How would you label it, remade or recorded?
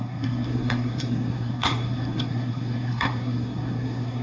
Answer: remade